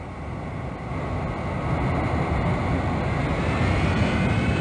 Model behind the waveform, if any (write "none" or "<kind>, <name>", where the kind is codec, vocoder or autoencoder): none